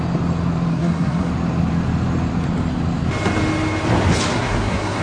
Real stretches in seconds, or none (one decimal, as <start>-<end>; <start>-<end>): 0.0-0.7; 1.3-4.3